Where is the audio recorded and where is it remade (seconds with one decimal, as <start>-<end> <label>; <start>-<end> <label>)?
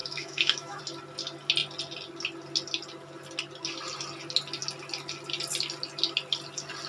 0.0-0.8 remade; 0.8-6.9 recorded